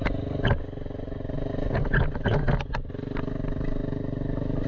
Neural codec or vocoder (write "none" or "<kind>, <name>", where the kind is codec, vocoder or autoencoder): none